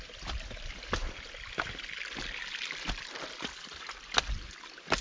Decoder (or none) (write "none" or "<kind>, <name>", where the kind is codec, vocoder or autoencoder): none